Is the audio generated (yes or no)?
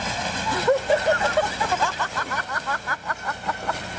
no